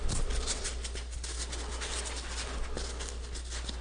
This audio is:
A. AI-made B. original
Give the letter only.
B